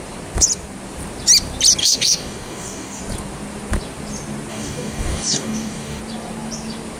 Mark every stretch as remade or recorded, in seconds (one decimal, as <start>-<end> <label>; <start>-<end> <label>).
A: 0.0-1.8 recorded; 1.8-3.0 remade; 3.0-4.5 recorded; 4.5-6.0 remade; 6.0-7.0 recorded